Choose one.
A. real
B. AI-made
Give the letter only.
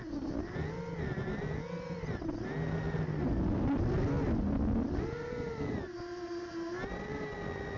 A